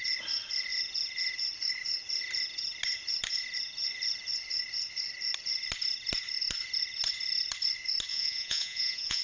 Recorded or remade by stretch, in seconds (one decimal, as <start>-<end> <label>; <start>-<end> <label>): 0.0-8.1 recorded; 8.1-9.2 remade